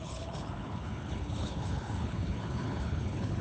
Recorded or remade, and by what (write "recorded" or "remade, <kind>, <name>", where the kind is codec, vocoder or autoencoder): remade, codec, HILCodec